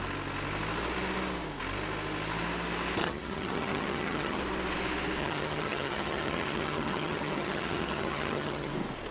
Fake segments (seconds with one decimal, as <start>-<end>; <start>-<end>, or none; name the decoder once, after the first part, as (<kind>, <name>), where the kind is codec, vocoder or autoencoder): 3.0-4.4 (vocoder, HiFi-GAN); 5.2-8.7